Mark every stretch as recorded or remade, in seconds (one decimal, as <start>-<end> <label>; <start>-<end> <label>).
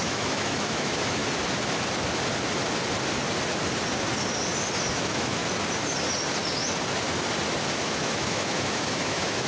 0.0-1.2 remade; 1.2-4.9 recorded; 4.9-5.4 remade; 5.4-7.8 recorded; 7.8-9.5 remade